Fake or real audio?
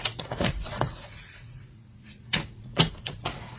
fake